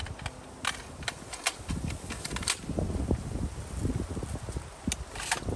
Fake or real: real